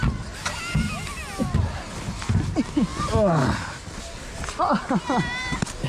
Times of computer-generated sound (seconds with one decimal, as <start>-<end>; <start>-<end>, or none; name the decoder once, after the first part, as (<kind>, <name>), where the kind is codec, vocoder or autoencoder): none